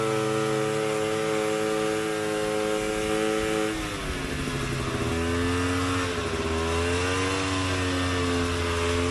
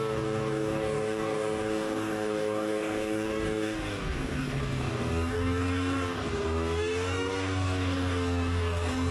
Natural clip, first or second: first